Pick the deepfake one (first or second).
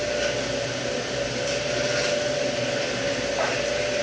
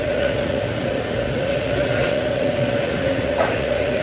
second